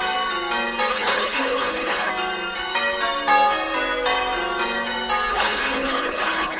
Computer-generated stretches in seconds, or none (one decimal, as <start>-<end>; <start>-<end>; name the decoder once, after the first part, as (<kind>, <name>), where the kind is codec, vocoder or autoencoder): 0.9-2.1 (codec, HILCodec); 5.3-6.6